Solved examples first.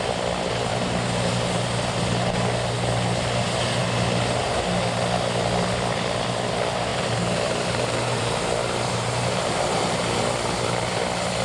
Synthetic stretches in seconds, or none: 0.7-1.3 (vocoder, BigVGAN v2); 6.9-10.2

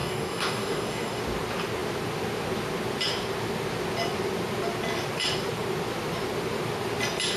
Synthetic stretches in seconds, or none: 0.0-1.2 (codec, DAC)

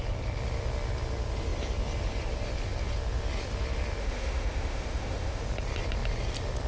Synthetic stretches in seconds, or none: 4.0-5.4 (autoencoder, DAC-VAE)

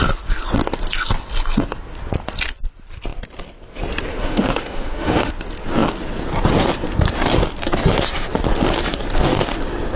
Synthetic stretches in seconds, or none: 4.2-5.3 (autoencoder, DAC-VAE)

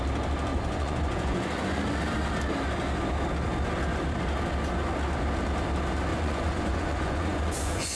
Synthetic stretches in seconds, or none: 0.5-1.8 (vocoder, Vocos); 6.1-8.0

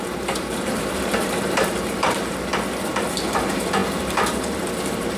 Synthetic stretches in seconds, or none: 0.0-2.5 (vocoder, BigVGAN v2); 3.1-5.2

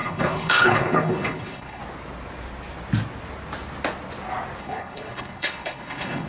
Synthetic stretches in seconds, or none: 0.0-1.8 (codec, HILCodec); 4.6-6.3